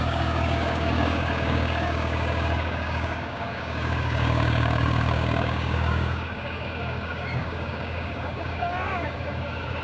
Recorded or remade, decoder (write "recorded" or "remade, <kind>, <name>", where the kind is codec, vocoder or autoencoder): remade, codec, DAC